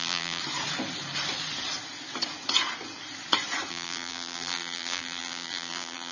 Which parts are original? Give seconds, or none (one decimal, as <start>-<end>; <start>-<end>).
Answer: 0.4-3.7

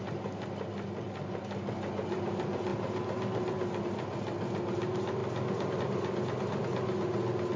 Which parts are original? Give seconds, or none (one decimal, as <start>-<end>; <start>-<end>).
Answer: 0.0-7.6

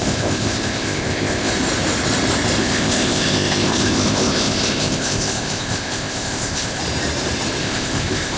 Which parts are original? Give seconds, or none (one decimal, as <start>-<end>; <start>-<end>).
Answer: 1.5-2.6; 6.8-7.6

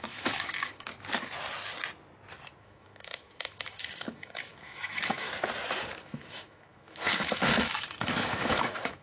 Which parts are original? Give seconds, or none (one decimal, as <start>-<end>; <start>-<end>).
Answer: 0.9-2.6; 5.3-6.0

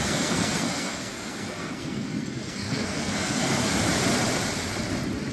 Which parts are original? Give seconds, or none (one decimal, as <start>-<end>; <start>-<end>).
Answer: 3.7-5.3

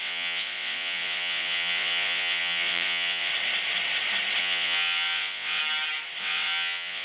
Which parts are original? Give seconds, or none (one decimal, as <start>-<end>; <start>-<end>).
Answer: 3.3-4.4; 5.6-6.2